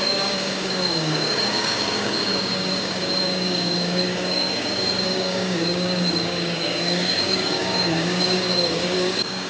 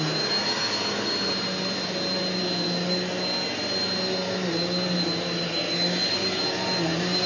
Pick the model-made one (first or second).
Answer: first